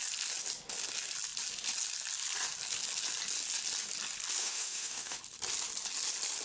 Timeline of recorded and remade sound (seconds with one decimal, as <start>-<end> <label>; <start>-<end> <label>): 0.0-4.4 recorded; 4.4-5.2 remade; 5.2-6.4 recorded